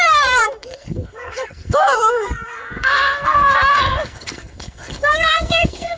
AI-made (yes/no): yes